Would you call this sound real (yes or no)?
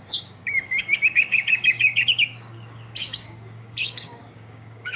no